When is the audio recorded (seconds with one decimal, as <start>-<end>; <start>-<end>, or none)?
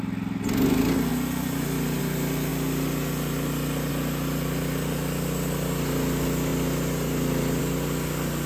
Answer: 0.0-8.5